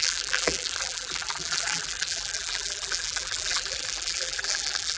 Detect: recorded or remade remade